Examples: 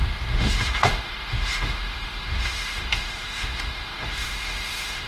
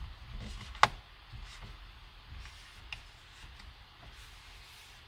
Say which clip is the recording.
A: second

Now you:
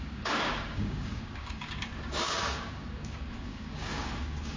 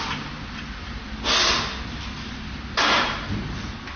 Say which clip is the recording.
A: second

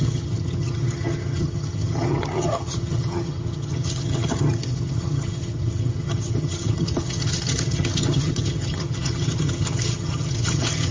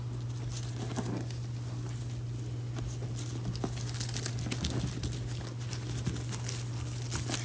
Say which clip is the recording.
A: second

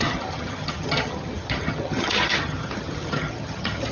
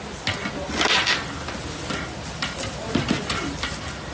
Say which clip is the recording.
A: second